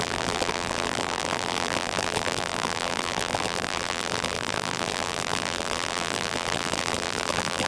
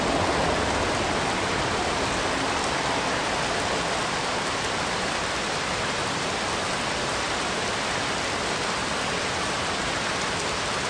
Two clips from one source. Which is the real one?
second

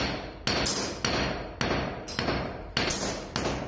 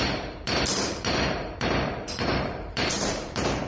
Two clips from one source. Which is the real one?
first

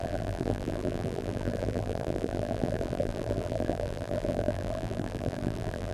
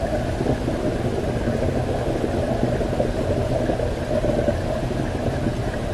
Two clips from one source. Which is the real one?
second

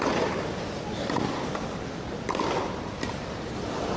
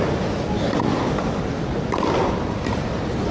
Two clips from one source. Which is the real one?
second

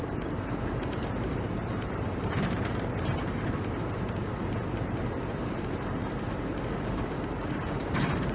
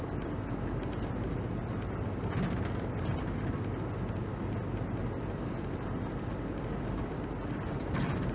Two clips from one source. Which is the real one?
second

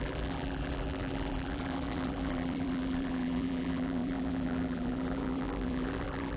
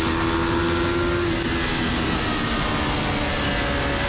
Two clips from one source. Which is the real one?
second